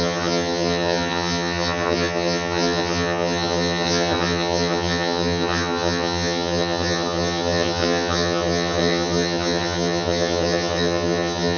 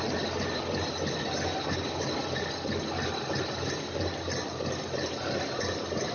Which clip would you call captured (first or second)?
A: second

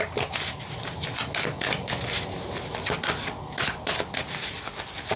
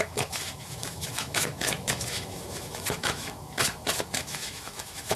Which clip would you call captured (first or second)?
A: first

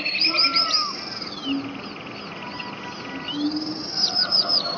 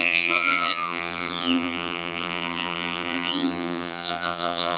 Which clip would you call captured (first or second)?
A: first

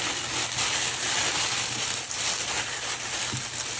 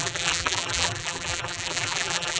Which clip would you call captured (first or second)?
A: first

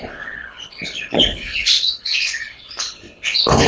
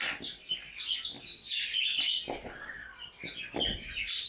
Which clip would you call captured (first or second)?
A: second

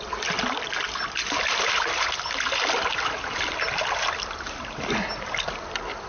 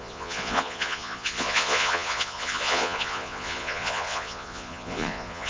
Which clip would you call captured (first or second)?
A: first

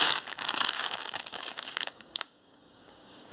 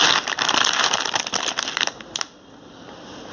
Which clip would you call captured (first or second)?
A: second